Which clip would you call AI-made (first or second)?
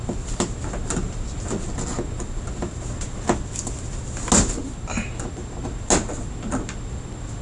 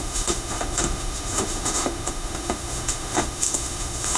second